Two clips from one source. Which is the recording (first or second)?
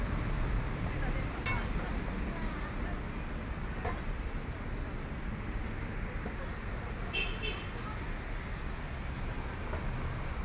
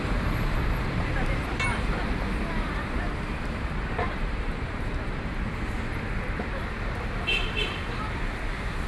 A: first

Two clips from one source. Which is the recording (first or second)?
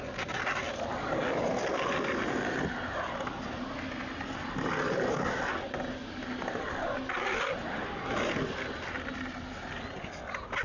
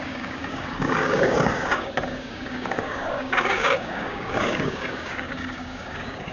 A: first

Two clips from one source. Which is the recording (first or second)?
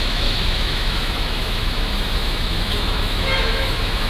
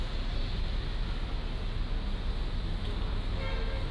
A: second